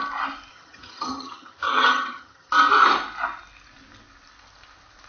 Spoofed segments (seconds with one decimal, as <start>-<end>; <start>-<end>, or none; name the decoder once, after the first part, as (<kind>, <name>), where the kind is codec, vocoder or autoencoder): 0.5-2.5 (vocoder, HiFi-GAN)